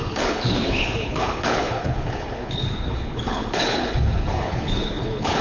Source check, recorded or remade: remade